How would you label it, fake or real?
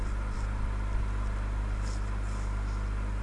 real